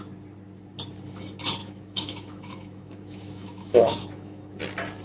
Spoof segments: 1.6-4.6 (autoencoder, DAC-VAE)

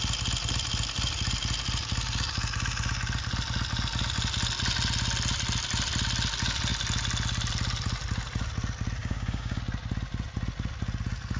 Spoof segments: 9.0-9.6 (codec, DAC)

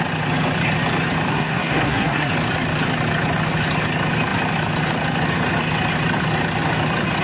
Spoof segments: 1.3-2.3 (codec, SNAC)

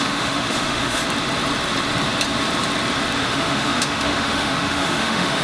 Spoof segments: 0.0-1.0 (autoencoder, DAC-VAE); 3.2-5.4

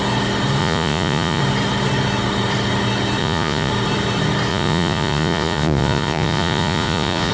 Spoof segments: 0.6-1.4 (vocoder, Vocos); 3.2-3.7; 4.5-7.3